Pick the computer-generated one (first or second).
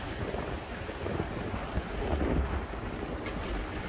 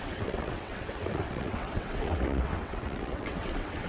second